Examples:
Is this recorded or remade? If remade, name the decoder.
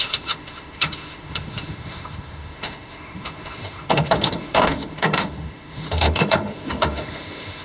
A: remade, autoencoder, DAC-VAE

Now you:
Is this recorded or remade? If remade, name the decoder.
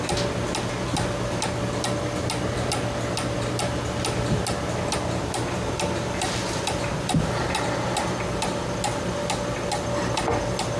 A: recorded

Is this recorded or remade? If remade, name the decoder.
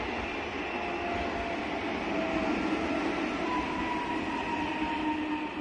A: recorded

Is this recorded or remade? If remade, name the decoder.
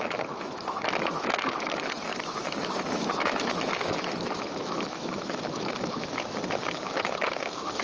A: remade, autoencoder, DAC-VAE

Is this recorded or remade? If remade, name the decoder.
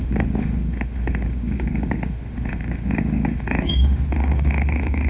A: remade, autoencoder, DAC-VAE